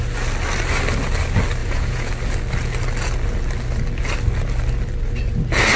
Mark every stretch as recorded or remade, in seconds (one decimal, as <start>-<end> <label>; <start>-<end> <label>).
0.0-1.6 recorded; 1.6-2.1 remade; 2.1-5.8 recorded